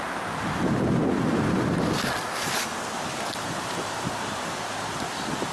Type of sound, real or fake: real